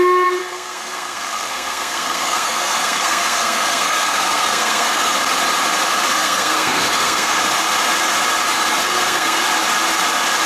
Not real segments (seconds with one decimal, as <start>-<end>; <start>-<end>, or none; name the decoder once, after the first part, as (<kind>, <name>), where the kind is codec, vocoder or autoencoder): 0.4-5.2 (codec, SNAC); 6.1-7.4; 8.8-9.4